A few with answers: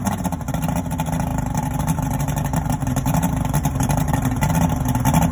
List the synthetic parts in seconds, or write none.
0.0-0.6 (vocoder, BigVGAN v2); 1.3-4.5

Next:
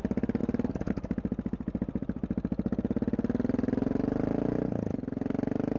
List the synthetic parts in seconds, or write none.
none

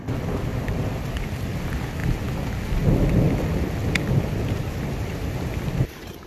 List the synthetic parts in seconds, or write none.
0.5-1.1 (vocoder, BigVGAN v2)

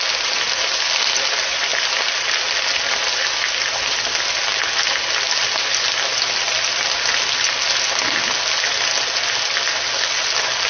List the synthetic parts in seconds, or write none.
none

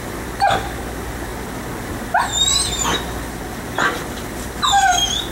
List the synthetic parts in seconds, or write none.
0.0-5.3 (vocoder, BigVGAN v2)

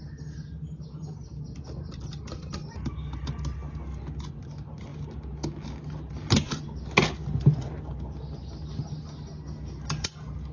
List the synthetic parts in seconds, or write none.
none

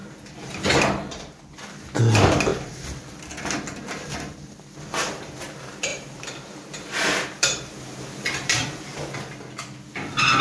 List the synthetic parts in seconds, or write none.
0.0-0.6 (vocoder, BigVGAN v2); 2.5-3.2; 5.9-6.7

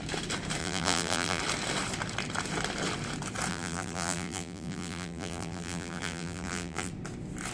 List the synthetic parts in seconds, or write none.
0.6-1.4 (vocoder, BigVGAN v2); 3.5-6.9